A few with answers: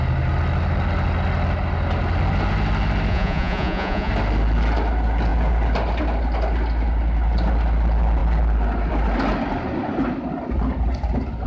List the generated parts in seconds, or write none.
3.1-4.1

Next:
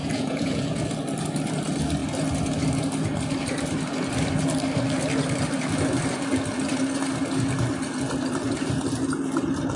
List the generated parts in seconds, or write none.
0.0-0.8

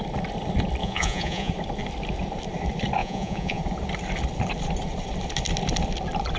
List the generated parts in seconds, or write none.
0.8-1.5; 3.0-3.6

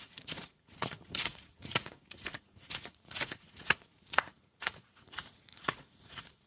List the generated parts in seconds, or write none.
0.0-6.5

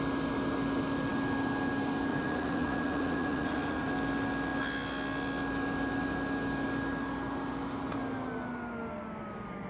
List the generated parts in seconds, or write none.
2.1-3.9